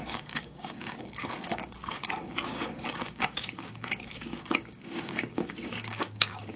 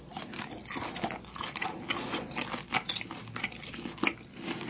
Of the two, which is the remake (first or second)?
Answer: first